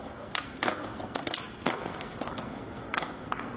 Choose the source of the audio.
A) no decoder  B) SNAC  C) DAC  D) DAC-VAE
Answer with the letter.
B